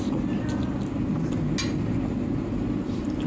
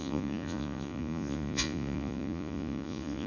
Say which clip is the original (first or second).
first